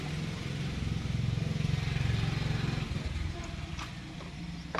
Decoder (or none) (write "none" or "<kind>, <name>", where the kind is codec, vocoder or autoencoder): none